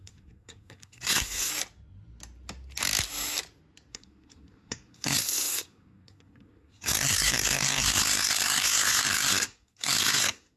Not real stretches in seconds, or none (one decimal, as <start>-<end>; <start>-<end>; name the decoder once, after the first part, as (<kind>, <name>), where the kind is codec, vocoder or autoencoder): 0.0-1.5 (codec, SNAC); 3.9-10.6